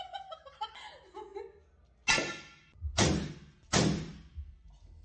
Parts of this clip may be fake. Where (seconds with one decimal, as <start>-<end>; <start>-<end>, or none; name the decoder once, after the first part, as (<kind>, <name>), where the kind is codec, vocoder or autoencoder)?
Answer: none